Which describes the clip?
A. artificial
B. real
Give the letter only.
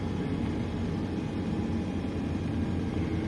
B